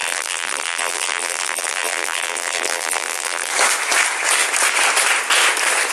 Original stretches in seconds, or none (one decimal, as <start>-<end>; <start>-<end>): 3.5-5.9